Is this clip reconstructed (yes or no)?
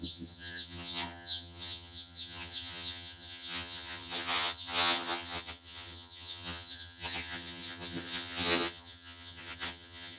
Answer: yes